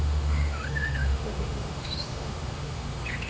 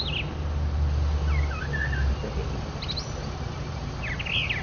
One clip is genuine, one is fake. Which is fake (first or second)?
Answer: first